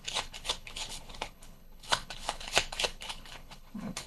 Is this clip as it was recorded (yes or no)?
no